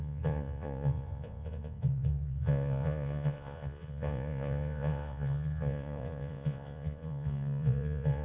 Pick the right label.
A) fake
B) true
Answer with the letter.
A